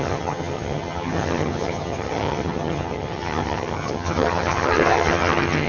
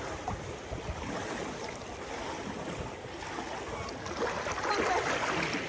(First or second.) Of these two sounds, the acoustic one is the second